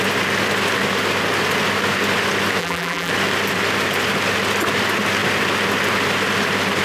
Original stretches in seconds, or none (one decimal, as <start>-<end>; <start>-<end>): 0.0-2.6; 3.1-6.8